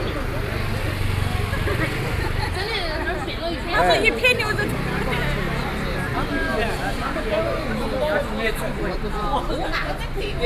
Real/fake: real